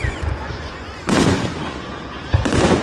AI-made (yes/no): yes